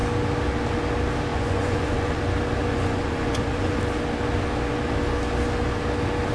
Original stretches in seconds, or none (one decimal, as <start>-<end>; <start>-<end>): 0.0-1.3; 2.2-2.7; 3.8-6.3